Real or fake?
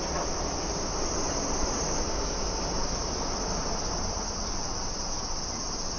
real